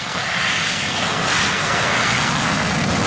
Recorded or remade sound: remade